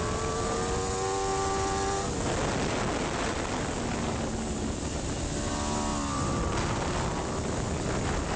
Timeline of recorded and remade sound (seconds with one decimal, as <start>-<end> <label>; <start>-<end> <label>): 0.0-8.4 recorded